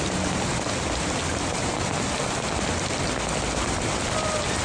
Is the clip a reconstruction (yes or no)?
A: no